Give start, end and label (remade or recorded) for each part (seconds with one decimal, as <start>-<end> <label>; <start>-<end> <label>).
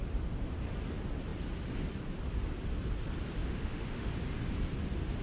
0.0-3.4 recorded; 3.4-4.1 remade; 4.1-5.2 recorded